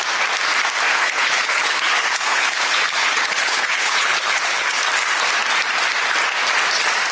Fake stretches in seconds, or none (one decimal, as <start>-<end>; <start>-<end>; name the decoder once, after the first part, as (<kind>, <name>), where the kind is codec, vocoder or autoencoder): 0.9-4.8 (codec, HILCodec)